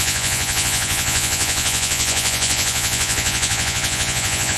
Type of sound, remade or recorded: remade